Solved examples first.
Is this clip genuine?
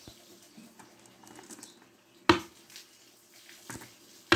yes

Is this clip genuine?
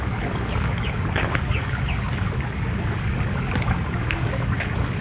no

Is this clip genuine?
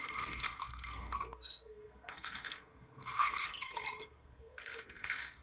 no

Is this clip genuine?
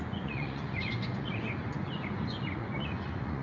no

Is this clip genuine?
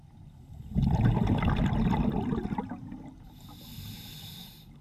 yes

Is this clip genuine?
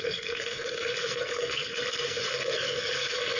no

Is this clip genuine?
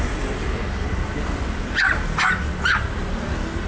yes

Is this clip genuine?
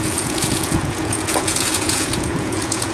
no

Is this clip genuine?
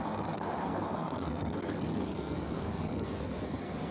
no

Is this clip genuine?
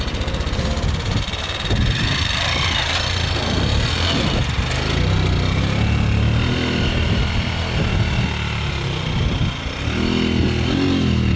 yes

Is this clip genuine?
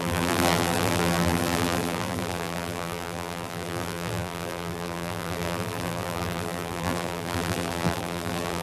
no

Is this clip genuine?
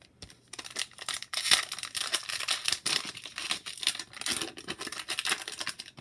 yes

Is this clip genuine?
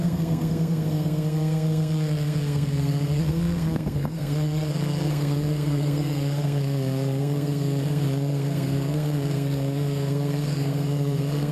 no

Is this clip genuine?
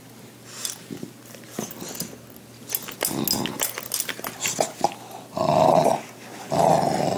yes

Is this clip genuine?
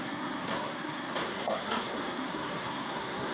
no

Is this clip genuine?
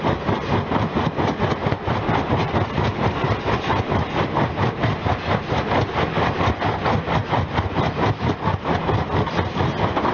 yes